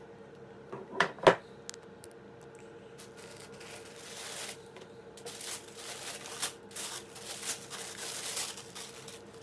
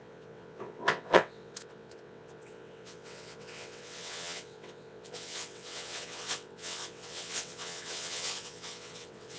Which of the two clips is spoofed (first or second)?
second